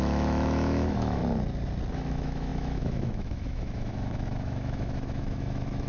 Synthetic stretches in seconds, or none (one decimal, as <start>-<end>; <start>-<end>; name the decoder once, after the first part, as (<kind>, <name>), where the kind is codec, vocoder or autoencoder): 0.0-1.2 (autoencoder, DAC-VAE); 1.9-5.9